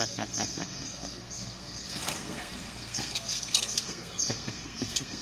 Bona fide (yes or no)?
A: no